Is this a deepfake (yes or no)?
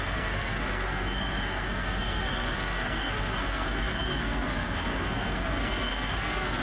yes